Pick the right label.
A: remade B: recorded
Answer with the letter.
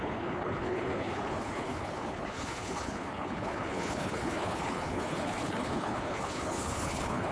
A